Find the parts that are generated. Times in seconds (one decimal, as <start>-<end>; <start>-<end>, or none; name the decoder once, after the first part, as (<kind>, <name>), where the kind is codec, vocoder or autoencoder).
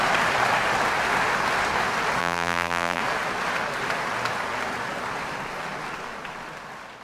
2.2-3.0 (vocoder, BigVGAN v2)